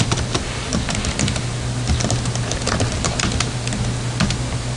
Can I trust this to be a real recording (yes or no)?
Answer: yes